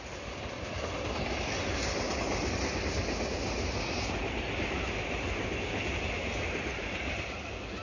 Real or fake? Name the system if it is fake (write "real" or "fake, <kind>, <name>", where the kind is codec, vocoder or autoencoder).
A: real